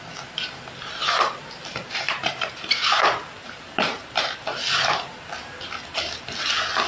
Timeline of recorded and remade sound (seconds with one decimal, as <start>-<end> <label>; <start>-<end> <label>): 0.0-1.7 recorded; 1.7-4.4 remade; 4.4-6.9 recorded

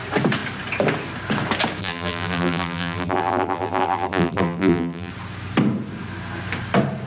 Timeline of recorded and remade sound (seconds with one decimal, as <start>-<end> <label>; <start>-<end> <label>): 0.0-1.8 recorded; 1.8-5.1 remade; 5.1-7.1 recorded

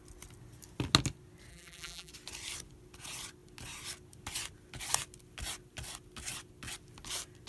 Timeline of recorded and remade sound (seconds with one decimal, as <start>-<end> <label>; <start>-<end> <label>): 0.0-1.5 recorded; 1.5-2.1 remade; 2.1-7.5 recorded

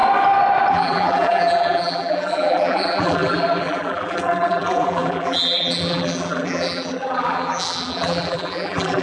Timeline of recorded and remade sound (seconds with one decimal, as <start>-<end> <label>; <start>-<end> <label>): 0.0-0.7 recorded; 0.7-9.0 remade

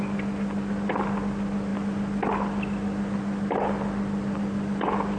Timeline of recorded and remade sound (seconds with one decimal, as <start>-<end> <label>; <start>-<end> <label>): 0.0-5.2 recorded